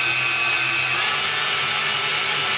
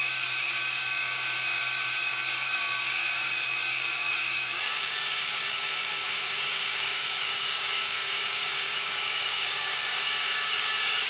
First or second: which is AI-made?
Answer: second